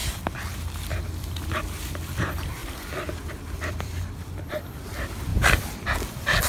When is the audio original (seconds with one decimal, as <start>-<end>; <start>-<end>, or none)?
0.0-0.9; 2.6-3.3